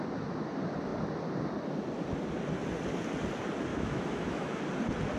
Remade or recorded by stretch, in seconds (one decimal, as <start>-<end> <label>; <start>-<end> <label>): 0.0-3.7 recorded; 3.7-4.6 remade; 4.6-5.2 recorded